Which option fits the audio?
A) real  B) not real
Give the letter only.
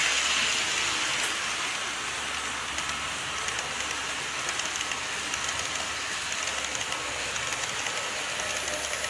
A